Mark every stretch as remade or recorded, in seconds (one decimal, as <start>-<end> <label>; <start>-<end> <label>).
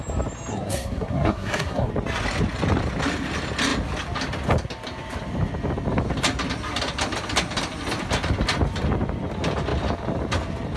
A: 0.0-0.5 recorded; 0.5-1.9 remade; 1.9-10.8 recorded